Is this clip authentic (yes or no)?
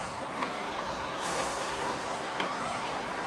no